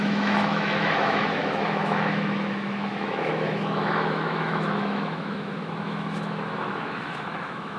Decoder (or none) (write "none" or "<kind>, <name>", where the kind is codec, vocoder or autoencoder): autoencoder, DAC-VAE